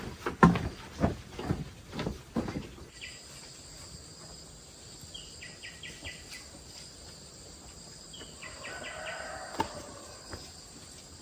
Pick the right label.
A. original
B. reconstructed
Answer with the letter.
A